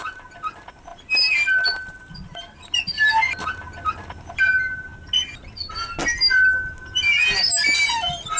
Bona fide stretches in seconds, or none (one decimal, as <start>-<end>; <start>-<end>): 0.0-8.4